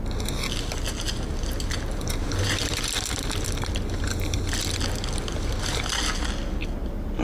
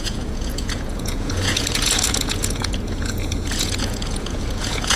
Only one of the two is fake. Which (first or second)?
second